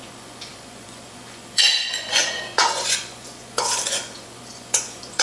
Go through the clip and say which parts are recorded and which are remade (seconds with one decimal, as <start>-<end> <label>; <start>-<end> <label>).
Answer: 0.0-5.2 remade